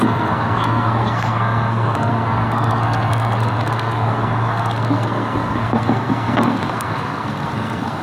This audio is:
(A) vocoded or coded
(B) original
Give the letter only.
A